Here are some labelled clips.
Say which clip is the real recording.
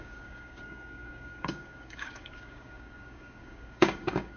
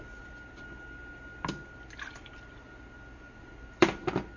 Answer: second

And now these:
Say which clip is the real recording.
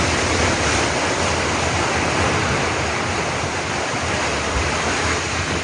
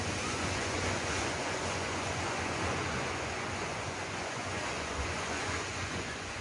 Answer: first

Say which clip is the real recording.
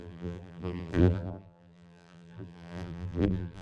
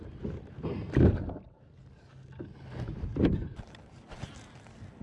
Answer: second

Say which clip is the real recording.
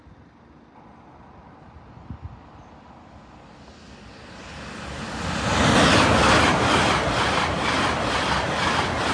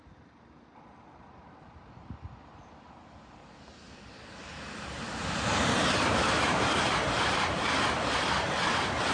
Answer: first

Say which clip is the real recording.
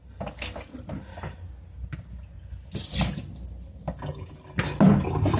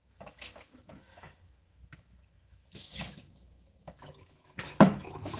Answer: first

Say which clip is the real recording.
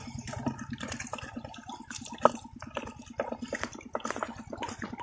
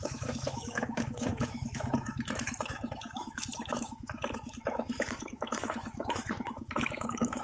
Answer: first